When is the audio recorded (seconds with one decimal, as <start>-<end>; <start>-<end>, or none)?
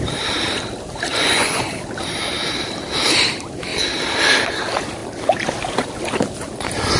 0.0-1.1; 1.7-7.0